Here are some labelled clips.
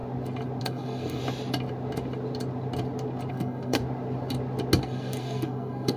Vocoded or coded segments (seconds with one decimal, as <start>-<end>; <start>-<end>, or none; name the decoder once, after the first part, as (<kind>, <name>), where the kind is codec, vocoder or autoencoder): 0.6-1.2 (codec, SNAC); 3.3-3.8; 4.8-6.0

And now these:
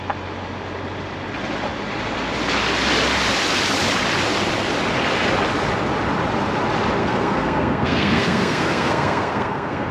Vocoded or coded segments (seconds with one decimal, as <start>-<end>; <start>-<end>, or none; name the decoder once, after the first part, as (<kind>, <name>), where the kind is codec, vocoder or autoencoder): 7.0-9.9 (codec, SNAC)

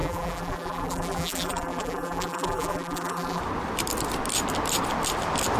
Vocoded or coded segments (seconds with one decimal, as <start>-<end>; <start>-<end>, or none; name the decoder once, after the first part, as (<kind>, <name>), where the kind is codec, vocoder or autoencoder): 0.0-3.4 (vocoder, BigVGAN v2)

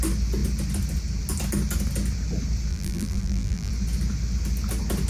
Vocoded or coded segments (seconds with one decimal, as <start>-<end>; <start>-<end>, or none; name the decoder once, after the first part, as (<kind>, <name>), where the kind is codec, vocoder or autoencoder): 2.7-3.7 (vocoder, BigVGAN v2)